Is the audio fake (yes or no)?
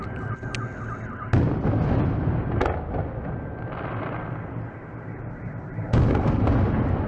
no